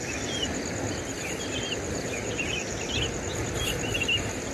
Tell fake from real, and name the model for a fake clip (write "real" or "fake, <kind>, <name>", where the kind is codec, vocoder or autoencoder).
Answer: real